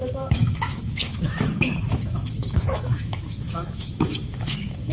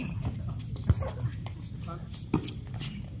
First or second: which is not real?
first